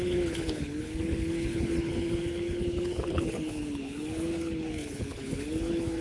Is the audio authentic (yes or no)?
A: no